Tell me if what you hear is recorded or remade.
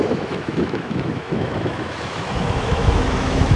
remade